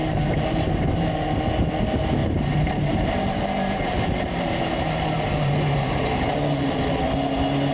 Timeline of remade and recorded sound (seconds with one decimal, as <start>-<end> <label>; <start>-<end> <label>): 0.0-1.4 remade; 1.4-2.2 recorded; 2.2-6.8 remade; 6.8-7.7 recorded